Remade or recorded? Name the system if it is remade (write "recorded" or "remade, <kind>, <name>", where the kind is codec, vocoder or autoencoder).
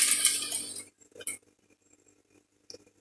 recorded